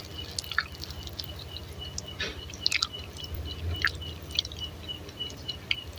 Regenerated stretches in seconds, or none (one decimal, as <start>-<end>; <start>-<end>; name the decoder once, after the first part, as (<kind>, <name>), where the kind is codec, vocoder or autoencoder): none